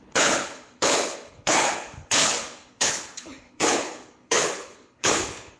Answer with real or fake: fake